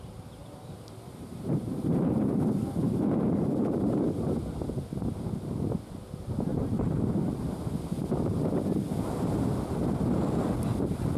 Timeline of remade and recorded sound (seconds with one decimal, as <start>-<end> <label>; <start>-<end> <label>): 0.0-0.4 recorded; 0.4-4.2 remade; 4.2-6.5 recorded; 6.5-7.3 remade; 7.3-11.2 recorded